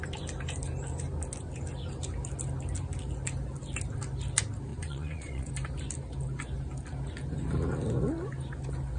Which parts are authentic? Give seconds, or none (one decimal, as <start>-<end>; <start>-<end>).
0.0-4.7; 5.5-9.0